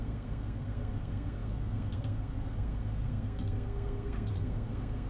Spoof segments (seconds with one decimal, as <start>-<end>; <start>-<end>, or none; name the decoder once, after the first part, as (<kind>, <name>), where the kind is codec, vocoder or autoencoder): 0.0-5.1 (codec, SNAC)